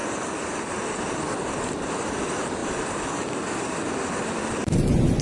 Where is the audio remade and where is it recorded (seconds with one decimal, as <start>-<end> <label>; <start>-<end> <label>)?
0.0-5.2 recorded